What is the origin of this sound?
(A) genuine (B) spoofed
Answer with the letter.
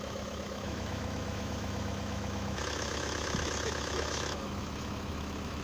B